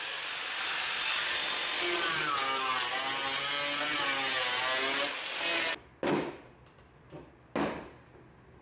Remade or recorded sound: recorded